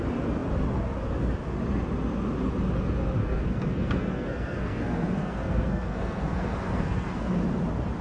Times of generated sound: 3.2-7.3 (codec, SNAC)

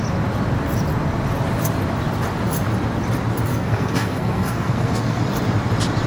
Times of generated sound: 3.5-5.2 (codec, SNAC)

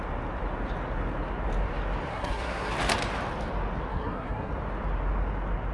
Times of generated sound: 2.1-2.7 (codec, SNAC); 3.9-4.5

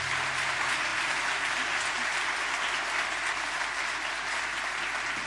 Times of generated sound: none

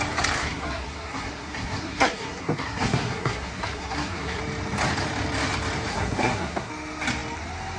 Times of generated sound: 0.4-4.4 (codec, SNAC); 5.9-6.7

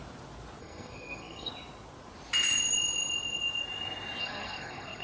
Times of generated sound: 0.6-1.5 (codec, SNAC); 4.2-5.0

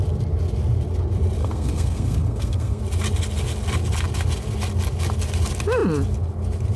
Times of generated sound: 1.4-2.8 (codec, SNAC)